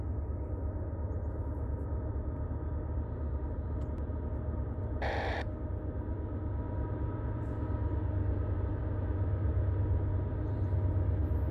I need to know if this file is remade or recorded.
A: recorded